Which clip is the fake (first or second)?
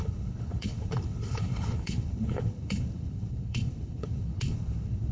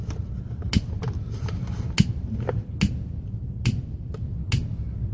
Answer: first